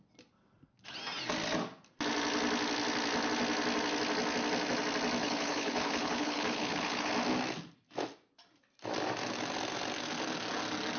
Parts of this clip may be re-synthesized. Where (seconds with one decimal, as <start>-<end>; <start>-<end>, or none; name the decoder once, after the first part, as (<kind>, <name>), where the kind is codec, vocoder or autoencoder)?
5.2-7.1 (codec, HILCodec)